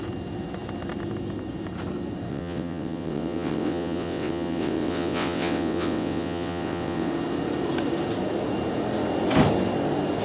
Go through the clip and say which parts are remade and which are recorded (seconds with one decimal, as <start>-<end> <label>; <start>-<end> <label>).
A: 0.0-2.3 recorded; 2.3-7.1 remade; 7.1-10.2 recorded